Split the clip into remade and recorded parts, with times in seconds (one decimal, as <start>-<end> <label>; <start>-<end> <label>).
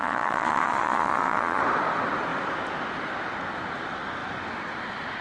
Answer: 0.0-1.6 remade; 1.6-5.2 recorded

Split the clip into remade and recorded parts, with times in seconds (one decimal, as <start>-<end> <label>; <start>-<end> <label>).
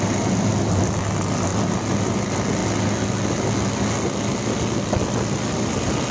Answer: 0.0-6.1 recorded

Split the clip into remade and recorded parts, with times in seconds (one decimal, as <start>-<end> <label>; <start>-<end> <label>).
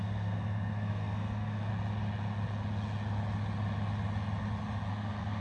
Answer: 0.0-1.7 remade; 1.7-4.9 recorded; 4.9-5.4 remade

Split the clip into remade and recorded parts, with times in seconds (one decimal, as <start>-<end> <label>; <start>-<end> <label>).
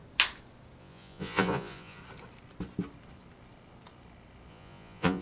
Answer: 0.0-0.8 recorded; 0.8-2.0 remade; 2.0-4.5 recorded; 4.5-5.2 remade